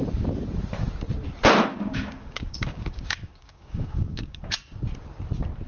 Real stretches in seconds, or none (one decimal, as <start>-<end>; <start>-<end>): 0.0-1.7; 4.4-5.7